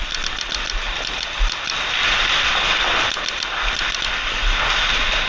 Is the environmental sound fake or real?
real